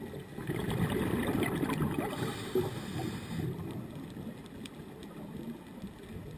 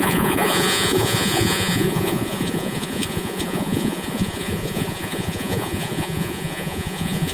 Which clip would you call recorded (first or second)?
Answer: first